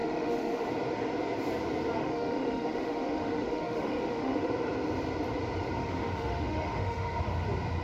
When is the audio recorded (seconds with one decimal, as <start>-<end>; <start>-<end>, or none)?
0.7-2.0; 4.5-5.8; 7.2-7.8